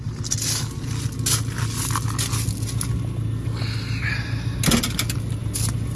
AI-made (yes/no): no